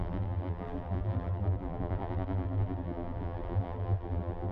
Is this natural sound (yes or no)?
no